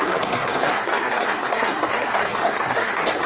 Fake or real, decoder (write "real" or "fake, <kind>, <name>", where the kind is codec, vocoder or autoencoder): fake, codec, SNAC